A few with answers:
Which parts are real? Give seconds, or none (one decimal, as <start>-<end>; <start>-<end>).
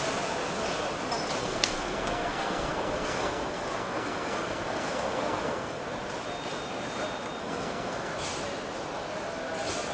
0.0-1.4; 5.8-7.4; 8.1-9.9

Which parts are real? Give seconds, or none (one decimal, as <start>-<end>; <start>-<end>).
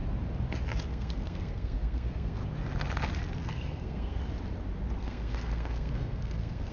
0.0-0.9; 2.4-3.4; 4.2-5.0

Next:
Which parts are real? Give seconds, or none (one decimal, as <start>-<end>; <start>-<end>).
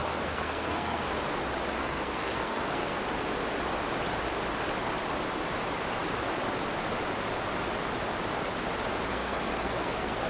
1.1-1.7; 3.0-9.1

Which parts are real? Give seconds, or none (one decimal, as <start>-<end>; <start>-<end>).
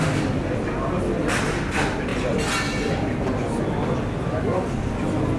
0.0-5.4